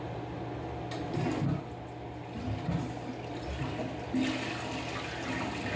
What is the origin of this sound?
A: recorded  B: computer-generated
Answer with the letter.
A